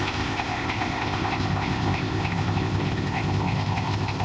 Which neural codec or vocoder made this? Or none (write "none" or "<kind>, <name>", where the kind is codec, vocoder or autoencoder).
codec, ZipCodec